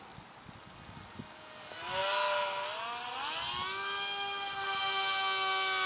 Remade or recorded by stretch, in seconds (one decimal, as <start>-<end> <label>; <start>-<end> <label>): 0.0-5.9 recorded